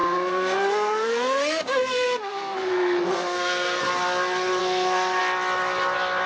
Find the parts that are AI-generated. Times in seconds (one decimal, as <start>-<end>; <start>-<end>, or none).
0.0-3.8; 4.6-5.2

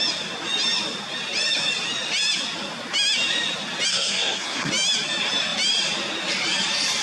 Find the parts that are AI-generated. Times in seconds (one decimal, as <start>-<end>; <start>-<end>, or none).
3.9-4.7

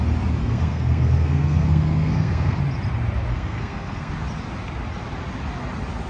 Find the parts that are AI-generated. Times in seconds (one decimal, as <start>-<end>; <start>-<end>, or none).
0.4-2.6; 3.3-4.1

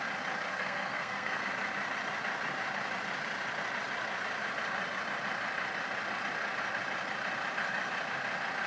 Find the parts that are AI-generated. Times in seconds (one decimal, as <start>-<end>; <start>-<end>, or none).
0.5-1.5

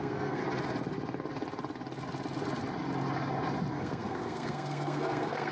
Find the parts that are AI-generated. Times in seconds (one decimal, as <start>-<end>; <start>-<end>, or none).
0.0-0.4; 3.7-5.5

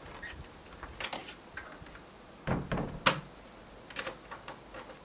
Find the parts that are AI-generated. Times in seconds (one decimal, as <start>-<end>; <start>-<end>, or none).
none

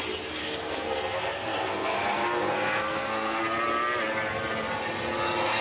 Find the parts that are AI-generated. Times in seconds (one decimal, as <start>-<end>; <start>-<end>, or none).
0.4-3.4

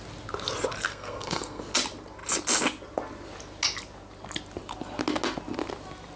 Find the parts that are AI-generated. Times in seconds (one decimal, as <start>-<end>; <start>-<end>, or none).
0.9-1.6